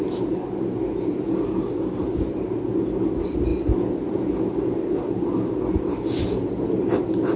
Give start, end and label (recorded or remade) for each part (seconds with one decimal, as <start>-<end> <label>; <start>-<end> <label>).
0.0-7.4 recorded